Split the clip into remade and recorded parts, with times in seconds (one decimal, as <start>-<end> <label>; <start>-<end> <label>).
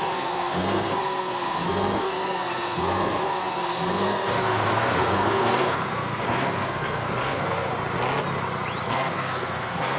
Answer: 0.0-7.7 remade; 7.7-8.9 recorded; 8.9-10.0 remade